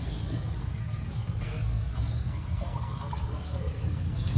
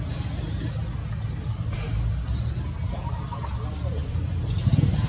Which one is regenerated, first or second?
first